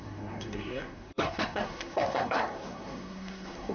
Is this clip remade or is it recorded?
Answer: remade